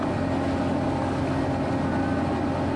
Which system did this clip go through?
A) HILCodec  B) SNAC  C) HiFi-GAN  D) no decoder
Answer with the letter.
D